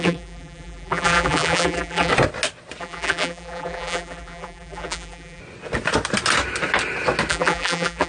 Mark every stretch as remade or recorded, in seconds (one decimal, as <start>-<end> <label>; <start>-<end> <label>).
0.0-2.1 remade; 2.1-2.8 recorded; 2.8-5.4 remade; 5.4-7.3 recorded; 7.3-8.1 remade